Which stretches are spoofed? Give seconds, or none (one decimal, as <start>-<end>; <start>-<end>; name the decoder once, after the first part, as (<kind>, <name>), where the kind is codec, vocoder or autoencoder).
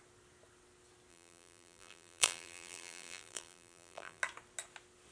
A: 1.1-4.2 (vocoder, BigVGAN v2)